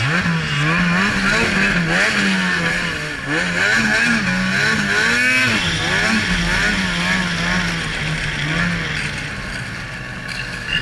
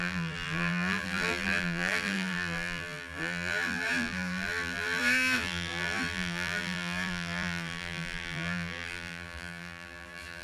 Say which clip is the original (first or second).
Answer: first